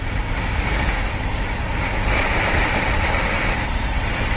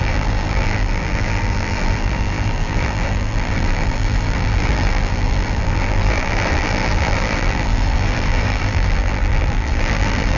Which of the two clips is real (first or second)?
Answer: first